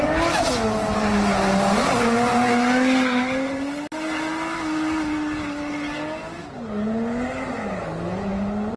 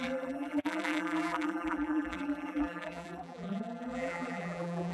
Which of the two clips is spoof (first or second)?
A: second